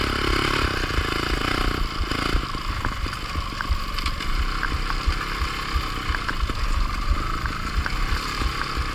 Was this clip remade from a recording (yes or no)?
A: no